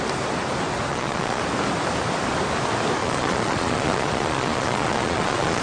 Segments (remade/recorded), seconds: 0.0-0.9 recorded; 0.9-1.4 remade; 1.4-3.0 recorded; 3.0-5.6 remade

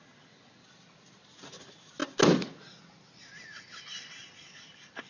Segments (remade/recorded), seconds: 0.0-5.1 recorded